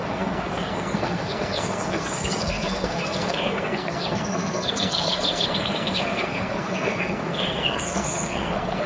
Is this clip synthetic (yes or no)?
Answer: yes